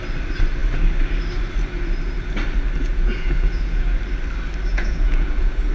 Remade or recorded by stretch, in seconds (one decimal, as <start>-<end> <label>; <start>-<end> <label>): 0.0-2.9 recorded; 2.9-4.0 remade; 4.0-4.7 recorded; 4.7-5.7 remade